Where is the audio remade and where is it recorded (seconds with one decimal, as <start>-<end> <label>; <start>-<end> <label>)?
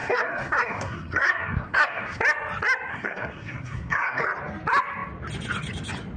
0.0-2.2 remade; 2.2-2.9 recorded; 2.9-4.2 remade; 4.2-6.2 recorded